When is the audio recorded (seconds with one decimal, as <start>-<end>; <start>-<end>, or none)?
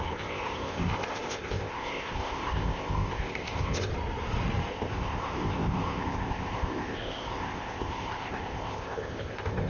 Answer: 3.9-4.7